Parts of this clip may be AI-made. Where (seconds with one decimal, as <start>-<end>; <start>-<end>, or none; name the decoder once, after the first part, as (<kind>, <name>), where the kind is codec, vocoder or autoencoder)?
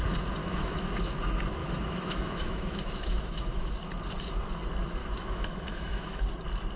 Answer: 0.4-1.0 (autoencoder, DAC-VAE); 1.6-3.7; 5.0-6.2